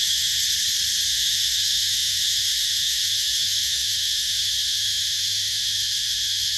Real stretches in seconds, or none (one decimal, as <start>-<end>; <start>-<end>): 0.4-1.1